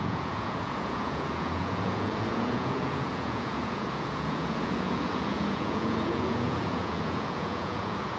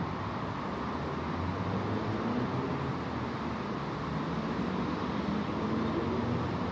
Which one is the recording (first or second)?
second